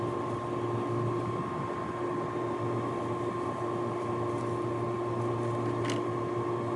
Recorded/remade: recorded